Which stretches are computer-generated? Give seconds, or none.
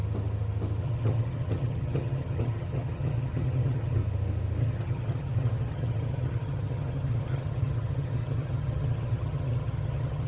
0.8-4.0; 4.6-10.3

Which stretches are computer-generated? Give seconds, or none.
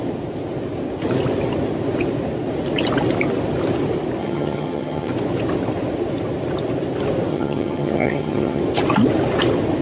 4.2-5.1; 7.3-8.6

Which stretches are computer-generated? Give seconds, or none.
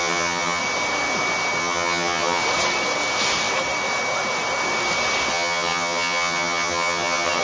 0.0-0.6; 1.6-2.4; 5.3-7.4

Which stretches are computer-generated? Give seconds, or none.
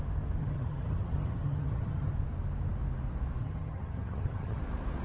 0.4-2.1; 3.4-4.6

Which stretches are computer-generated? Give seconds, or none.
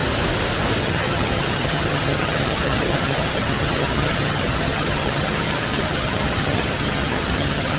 0.8-7.8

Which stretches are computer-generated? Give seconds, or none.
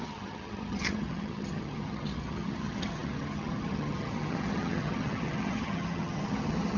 0.0-6.8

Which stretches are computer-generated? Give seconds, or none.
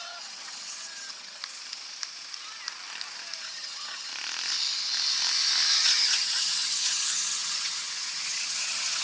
0.0-1.4; 3.4-4.1; 5.8-9.0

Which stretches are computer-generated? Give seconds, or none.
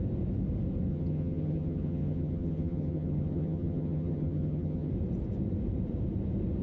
0.9-4.9